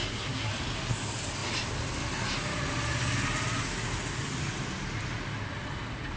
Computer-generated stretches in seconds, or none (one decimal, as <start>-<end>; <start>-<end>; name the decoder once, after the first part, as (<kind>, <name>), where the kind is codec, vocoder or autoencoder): 0.0-0.5 (codec, SNAC)